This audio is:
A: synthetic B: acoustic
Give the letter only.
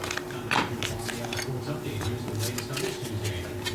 B